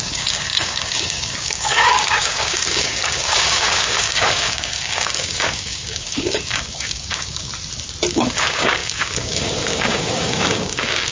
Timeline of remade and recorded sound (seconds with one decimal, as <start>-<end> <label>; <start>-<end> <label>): 0.0-7.5 remade; 7.5-8.1 recorded; 8.1-11.1 remade

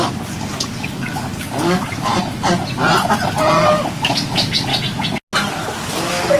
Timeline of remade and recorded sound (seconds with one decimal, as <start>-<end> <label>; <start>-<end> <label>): 0.0-2.1 remade; 2.1-3.7 recorded; 3.7-4.7 remade; 4.7-5.6 recorded; 5.6-6.4 remade